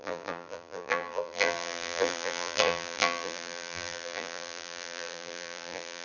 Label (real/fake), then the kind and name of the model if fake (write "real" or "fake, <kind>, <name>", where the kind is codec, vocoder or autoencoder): fake, vocoder, BigVGAN v2